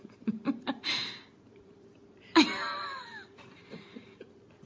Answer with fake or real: fake